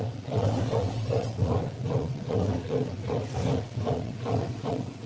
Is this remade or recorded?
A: remade